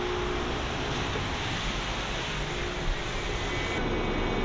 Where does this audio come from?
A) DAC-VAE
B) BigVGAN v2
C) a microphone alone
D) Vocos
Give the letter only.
C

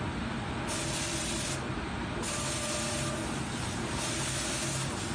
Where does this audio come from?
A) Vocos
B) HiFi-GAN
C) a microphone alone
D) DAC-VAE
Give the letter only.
C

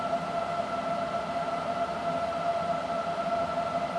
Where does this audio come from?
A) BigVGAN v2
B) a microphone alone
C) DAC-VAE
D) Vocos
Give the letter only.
B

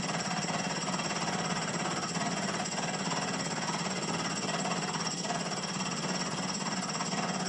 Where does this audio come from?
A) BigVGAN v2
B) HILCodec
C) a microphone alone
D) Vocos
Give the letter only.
D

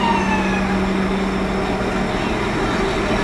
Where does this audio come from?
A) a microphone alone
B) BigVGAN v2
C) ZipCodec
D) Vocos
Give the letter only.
A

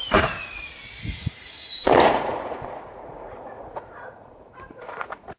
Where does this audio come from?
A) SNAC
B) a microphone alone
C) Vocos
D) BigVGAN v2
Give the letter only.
C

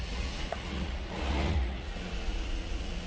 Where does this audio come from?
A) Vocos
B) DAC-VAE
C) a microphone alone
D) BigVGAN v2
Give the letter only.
A